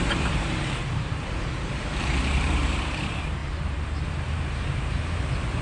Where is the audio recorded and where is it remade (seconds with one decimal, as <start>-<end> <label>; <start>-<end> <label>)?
0.0-5.6 remade